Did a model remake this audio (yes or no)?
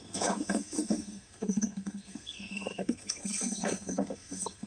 yes